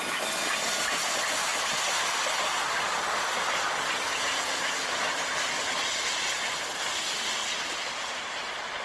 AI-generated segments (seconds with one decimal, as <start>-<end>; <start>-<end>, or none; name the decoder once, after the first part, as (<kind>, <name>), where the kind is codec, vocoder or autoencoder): 1.5-6.7 (vocoder, BigVGAN v2); 7.4-8.8